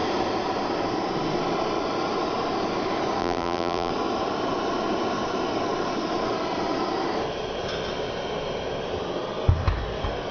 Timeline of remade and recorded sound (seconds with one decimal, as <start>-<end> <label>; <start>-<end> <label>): 0.0-3.2 recorded; 3.2-3.9 remade; 3.9-10.3 recorded